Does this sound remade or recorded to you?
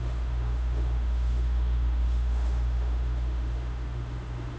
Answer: remade